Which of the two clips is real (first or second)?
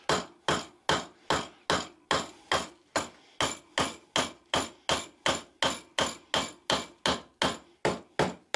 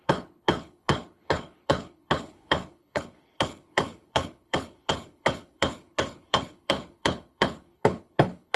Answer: first